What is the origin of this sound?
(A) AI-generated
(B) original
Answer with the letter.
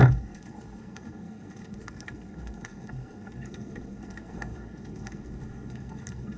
A